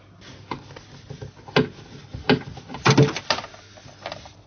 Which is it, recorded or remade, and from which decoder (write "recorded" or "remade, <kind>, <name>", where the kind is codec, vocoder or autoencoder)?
recorded